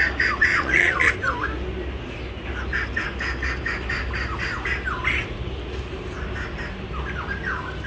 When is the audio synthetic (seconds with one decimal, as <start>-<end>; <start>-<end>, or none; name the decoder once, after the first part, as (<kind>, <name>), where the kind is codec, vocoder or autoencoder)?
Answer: 0.5-1.1 (vocoder, Vocos)